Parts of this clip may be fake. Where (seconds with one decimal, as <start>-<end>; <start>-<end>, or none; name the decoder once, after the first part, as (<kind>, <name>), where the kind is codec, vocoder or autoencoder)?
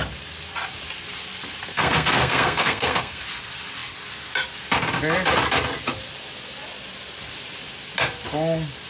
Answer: 1.7-3.2 (codec, SNAC)